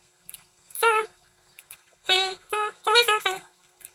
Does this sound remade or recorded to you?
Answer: remade